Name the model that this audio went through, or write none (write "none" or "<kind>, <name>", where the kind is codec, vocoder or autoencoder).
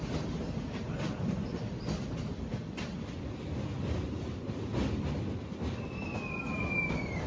none